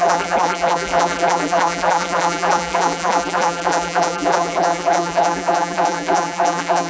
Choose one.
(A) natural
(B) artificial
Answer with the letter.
B